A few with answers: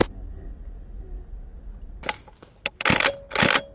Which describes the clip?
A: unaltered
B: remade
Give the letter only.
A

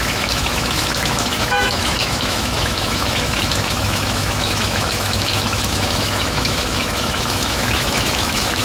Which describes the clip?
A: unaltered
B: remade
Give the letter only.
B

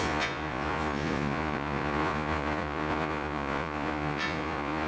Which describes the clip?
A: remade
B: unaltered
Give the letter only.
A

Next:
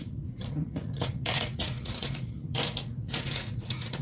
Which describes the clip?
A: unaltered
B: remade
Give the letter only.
B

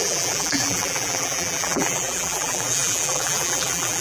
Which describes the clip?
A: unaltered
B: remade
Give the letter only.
B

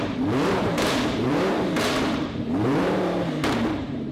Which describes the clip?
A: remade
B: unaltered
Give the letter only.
A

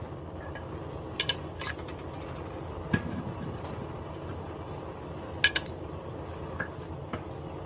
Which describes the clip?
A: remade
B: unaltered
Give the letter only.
B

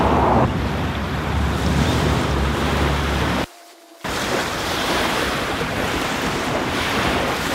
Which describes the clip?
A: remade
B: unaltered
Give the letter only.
A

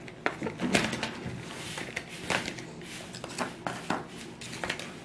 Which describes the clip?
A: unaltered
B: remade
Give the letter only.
A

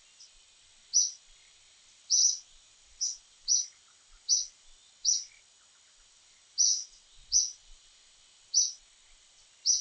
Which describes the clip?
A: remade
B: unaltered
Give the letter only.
B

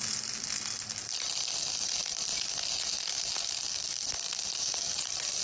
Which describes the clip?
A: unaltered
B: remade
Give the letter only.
A